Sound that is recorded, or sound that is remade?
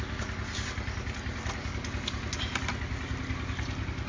recorded